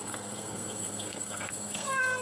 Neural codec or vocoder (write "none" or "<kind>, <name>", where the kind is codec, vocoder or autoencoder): codec, SNAC